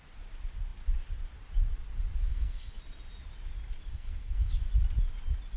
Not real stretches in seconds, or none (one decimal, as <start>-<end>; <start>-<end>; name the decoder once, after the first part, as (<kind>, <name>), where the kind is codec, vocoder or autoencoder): 2.3-2.8 (codec, SNAC); 3.9-4.5

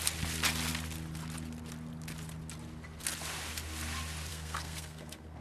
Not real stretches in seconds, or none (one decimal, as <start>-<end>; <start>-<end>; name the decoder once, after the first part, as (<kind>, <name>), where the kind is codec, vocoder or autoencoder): 4.3-5.4 (codec, SNAC)

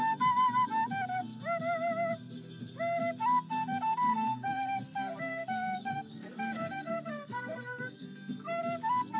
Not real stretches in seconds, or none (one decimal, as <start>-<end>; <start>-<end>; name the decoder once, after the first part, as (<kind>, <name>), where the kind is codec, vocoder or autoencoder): 4.1-8.6 (codec, SNAC)

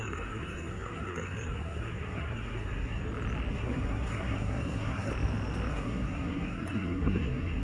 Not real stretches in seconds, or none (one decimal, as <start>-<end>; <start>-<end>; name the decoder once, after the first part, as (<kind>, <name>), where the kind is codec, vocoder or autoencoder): 0.0-3.0 (codec, SNAC); 3.5-5.1; 5.7-7.6

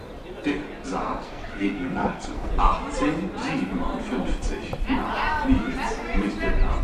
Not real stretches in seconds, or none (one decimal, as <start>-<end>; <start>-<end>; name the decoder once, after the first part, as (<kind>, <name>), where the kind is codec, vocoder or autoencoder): 1.0-2.5 (codec, SNAC)

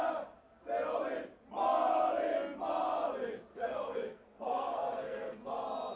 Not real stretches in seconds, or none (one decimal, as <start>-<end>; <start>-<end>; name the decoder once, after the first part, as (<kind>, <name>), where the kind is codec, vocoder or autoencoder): 3.5-5.5 (codec, SNAC)

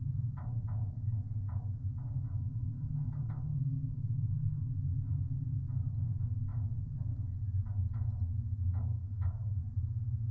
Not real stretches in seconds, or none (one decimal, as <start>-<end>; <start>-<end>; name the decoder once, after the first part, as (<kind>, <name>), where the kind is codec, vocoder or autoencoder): 2.3-4.7 (codec, SNAC); 8.7-9.6

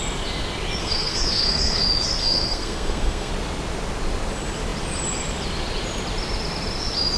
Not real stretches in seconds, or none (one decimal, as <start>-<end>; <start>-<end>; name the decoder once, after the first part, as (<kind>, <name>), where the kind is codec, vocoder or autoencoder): 0.8-1.8 (codec, SNAC); 2.2-3.3